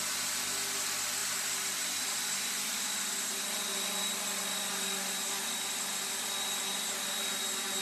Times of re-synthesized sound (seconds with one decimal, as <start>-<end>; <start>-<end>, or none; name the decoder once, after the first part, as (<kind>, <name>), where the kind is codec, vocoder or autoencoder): 1.2-2.7 (vocoder, BigVGAN v2)